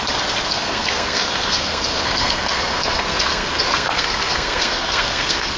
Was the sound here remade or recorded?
remade